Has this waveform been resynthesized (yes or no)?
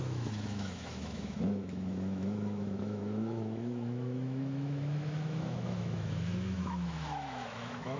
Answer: yes